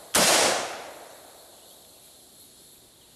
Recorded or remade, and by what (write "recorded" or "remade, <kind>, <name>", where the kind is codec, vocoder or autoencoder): recorded